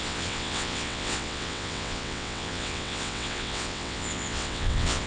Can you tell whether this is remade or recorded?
remade